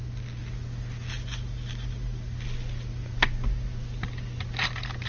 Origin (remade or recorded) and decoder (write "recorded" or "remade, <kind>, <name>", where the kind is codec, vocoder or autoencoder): recorded